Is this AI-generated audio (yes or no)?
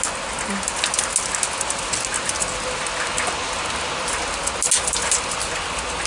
no